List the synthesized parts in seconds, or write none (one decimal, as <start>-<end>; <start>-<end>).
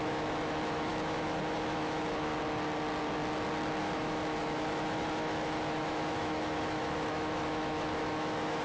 0.0-2.3; 3.8-8.6